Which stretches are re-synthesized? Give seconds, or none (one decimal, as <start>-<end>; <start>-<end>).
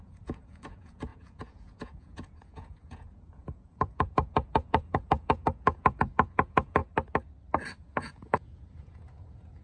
0.0-6.8; 7.8-9.6